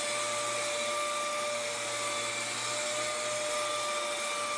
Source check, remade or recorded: recorded